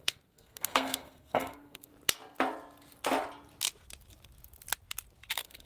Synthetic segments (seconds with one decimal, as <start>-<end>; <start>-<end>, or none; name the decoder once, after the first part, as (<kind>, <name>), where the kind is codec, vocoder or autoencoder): 0.0-1.9 (codec, SNAC); 5.3-5.7